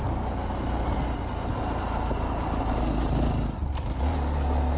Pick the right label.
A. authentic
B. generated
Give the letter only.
A